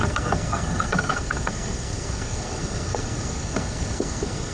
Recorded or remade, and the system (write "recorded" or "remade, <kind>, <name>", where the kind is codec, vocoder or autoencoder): remade, codec, SNAC